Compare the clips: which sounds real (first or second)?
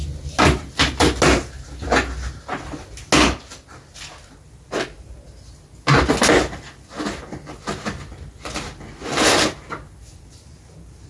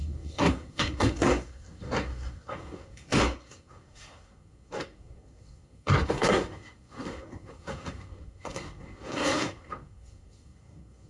first